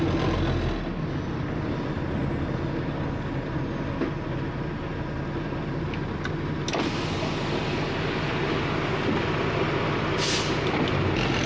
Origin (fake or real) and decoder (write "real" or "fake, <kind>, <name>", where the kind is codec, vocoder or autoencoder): real